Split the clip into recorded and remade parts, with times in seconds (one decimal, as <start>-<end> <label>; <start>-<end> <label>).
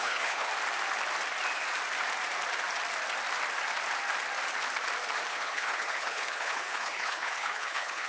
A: 0.0-0.5 remade; 0.5-5.3 recorded; 5.3-8.1 remade